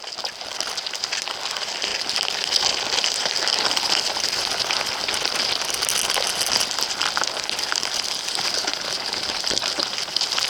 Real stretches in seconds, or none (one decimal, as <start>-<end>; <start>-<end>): 1.9-6.8